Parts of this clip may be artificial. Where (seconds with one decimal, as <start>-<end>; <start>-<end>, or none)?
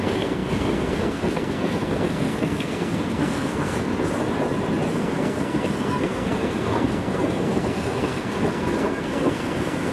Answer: 0.0-3.9; 4.9-9.9